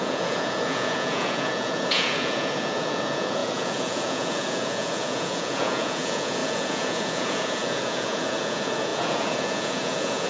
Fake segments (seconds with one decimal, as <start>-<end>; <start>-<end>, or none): 0.0-10.3